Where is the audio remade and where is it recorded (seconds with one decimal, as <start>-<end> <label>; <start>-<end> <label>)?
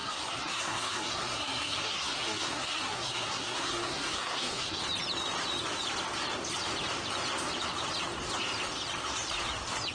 0.0-4.8 remade; 4.8-9.9 recorded